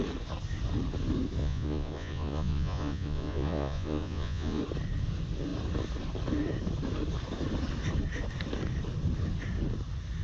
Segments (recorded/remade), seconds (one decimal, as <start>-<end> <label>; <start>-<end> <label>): 0.0-1.4 recorded; 1.4-4.6 remade; 4.6-10.2 recorded